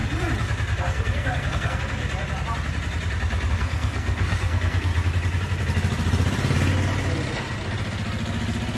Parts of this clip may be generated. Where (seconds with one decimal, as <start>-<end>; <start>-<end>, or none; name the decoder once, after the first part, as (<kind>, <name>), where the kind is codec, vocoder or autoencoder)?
0.8-2.0 (codec, SNAC); 3.5-4.9